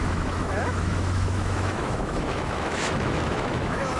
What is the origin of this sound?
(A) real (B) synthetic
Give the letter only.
B